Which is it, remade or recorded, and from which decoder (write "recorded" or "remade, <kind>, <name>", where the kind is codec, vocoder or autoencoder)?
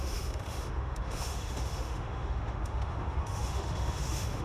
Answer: remade, autoencoder, DAC-VAE